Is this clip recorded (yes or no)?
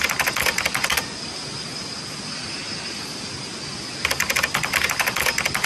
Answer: yes